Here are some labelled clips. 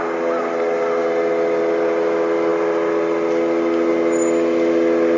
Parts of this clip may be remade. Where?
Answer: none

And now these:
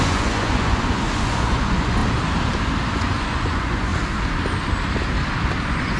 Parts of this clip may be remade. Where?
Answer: 0.0-2.0 (vocoder, Vocos); 2.9-3.9; 5.6-6.0

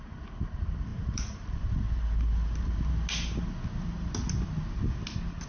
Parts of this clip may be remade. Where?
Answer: 0.9-2.9 (vocoder, BigVGAN v2)

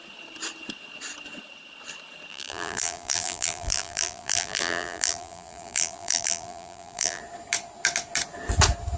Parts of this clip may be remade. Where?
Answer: 2.3-7.2 (vocoder, BigVGAN v2)

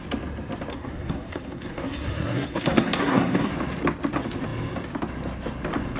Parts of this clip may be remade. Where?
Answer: 0.7-3.5 (codec, SNAC)

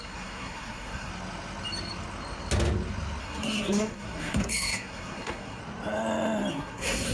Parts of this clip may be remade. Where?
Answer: 0.0-1.1 (codec, SNAC); 3.2-5.6; 6.5-7.1